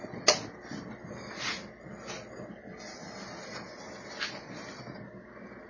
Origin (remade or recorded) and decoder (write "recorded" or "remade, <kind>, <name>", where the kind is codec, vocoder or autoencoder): recorded